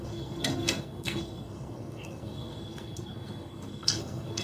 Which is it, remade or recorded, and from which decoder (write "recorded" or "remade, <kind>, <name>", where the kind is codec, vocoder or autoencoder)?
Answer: remade, codec, SNAC